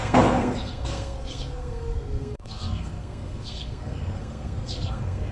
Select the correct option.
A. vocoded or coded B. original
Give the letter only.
A